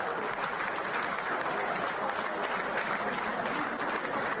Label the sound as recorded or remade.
recorded